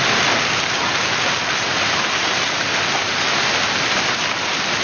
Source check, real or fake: real